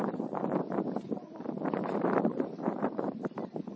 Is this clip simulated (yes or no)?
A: yes